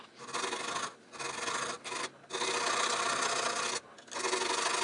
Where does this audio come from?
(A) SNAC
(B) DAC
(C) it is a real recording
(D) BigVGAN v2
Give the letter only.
C